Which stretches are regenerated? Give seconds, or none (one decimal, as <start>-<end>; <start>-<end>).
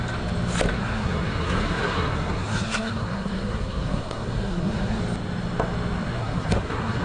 0.8-5.0; 6.2-7.0